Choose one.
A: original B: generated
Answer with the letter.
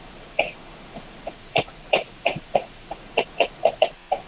B